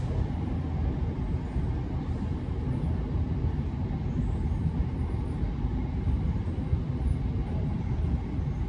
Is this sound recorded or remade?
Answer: recorded